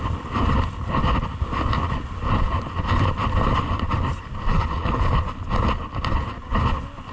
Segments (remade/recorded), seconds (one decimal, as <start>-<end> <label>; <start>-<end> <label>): 0.0-4.5 recorded; 4.5-5.1 remade; 5.1-7.1 recorded